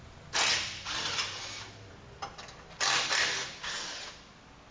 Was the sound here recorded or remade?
recorded